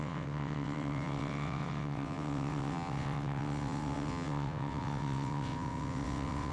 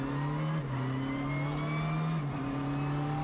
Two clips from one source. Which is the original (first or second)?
second